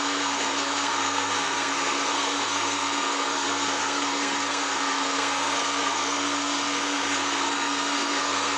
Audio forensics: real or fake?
fake